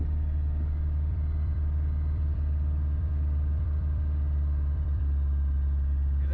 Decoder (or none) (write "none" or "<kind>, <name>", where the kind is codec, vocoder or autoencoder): vocoder, BigVGAN v2